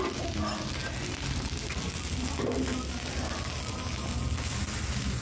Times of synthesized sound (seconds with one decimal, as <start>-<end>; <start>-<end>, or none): none